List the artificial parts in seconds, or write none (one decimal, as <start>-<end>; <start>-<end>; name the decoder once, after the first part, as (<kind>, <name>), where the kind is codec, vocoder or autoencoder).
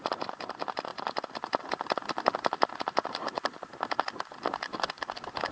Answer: none